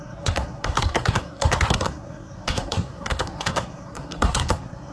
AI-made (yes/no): yes